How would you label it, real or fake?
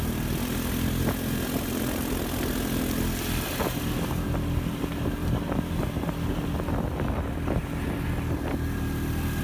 real